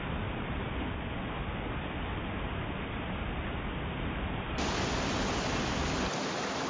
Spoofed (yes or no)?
no